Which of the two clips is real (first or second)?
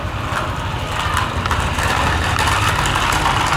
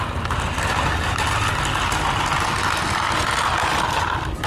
second